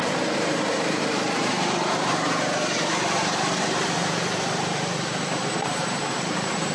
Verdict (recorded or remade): remade